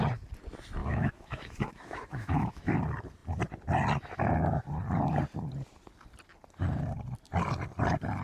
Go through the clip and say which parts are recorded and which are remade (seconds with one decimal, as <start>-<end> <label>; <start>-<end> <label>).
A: 0.0-0.8 recorded; 0.8-2.7 remade; 2.7-8.2 recorded